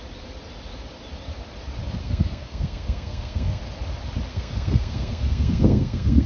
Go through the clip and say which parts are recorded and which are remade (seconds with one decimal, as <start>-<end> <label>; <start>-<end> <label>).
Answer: 0.0-2.0 recorded; 2.0-3.6 remade; 3.6-4.3 recorded; 4.3-6.3 remade